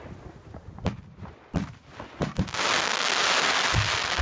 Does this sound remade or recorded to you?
recorded